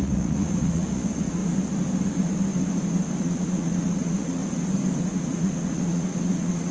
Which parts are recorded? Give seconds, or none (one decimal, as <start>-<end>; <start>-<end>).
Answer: 1.4-3.2; 4.4-5.0